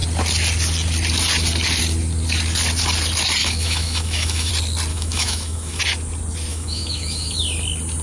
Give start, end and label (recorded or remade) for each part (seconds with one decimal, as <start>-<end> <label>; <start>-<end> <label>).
0.0-3.4 recorded; 3.4-4.5 remade; 4.5-4.9 recorded; 4.9-5.8 remade; 5.8-6.5 recorded; 6.5-7.4 remade; 7.4-8.0 recorded